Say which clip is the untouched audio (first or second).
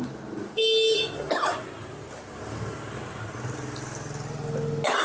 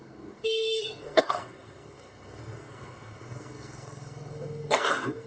first